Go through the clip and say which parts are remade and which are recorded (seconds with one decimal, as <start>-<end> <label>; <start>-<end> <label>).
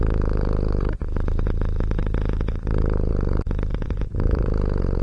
0.0-3.7 recorded; 3.7-4.5 remade; 4.5-5.0 recorded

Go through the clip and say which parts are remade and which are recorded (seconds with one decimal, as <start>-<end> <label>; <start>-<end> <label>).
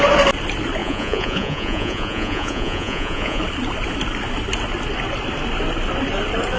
0.0-0.8 recorded; 0.8-3.4 remade; 3.4-6.6 recorded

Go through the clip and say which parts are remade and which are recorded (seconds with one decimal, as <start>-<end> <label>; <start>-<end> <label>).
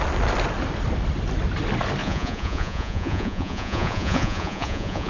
0.0-2.0 recorded; 2.0-5.1 remade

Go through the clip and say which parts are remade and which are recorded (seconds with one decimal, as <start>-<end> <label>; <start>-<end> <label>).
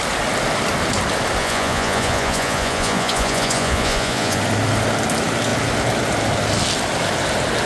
0.0-1.4 recorded; 1.4-4.4 remade; 4.4-7.7 recorded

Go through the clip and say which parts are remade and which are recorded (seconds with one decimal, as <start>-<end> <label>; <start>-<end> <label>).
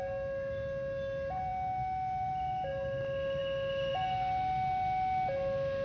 0.0-5.8 recorded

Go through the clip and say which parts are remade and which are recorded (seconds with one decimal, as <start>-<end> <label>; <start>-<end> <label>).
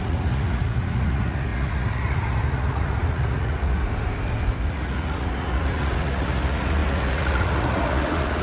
0.0-3.8 remade; 3.8-4.6 recorded; 4.6-8.4 remade